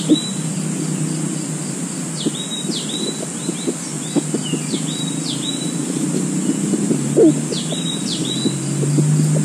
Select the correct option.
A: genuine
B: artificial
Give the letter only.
A